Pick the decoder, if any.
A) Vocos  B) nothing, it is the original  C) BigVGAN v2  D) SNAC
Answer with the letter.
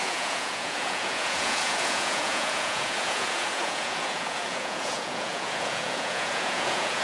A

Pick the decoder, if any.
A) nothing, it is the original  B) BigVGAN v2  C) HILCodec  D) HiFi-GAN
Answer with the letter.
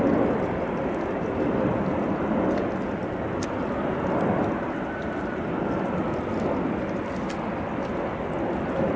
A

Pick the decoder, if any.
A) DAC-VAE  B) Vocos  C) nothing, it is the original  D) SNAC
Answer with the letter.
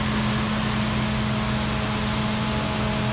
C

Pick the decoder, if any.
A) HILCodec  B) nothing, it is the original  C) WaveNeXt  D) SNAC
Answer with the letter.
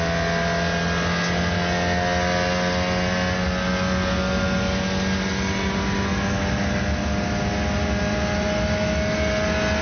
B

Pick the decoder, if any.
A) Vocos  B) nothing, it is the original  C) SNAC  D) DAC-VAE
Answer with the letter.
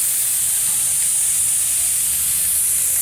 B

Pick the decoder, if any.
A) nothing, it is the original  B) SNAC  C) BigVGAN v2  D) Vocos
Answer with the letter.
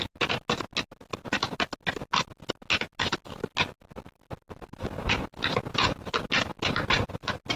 A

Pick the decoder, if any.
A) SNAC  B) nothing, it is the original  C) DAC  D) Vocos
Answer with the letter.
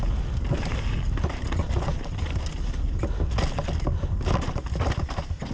B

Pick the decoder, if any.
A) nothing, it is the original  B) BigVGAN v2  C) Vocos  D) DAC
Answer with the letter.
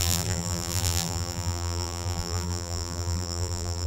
B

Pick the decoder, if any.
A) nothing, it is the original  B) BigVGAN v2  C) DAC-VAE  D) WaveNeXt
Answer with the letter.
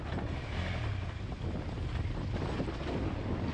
A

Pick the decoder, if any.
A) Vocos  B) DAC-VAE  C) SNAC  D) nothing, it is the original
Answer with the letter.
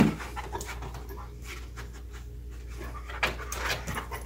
D